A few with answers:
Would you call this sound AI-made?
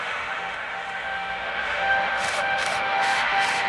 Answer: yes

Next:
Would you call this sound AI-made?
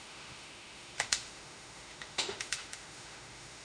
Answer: yes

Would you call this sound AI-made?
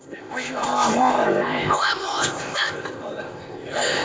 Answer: yes